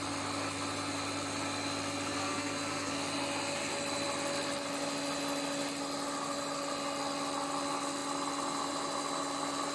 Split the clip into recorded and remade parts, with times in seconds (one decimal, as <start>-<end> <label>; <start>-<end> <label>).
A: 0.0-2.2 recorded; 2.2-2.9 remade; 2.9-9.7 recorded